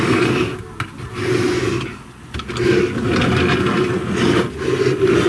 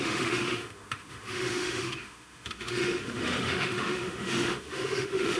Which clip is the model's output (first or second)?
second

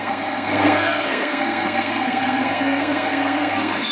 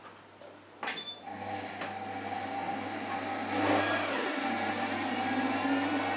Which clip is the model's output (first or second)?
first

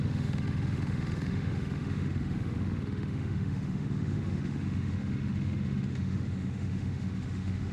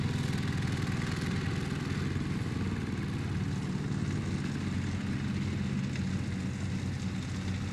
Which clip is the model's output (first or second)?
first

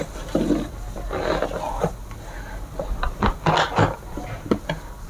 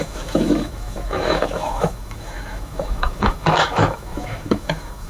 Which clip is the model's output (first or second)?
second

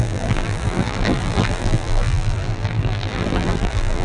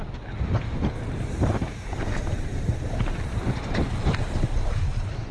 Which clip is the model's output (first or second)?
first